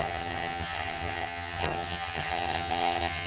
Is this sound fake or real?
fake